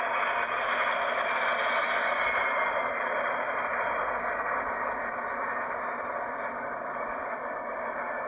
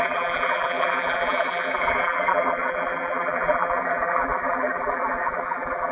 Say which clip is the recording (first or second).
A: first